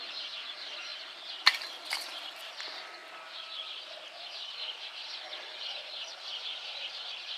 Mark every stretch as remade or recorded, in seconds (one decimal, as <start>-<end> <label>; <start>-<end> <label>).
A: 0.0-3.0 remade; 3.0-4.3 recorded; 4.3-7.4 remade